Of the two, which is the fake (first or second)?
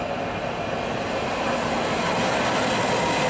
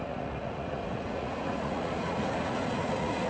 second